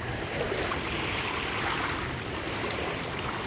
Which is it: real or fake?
real